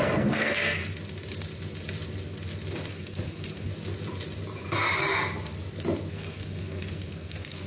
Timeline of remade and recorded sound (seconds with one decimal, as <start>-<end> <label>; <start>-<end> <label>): 0.0-0.8 remade; 0.8-2.9 recorded; 2.9-3.7 remade; 3.7-6.1 recorded; 6.1-7.7 remade